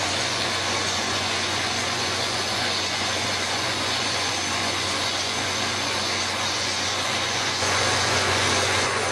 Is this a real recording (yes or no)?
no